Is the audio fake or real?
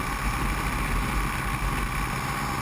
real